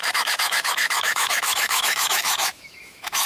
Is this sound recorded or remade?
remade